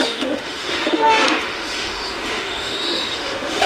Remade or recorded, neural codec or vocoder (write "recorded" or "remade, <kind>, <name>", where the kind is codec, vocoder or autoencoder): remade, autoencoder, DAC-VAE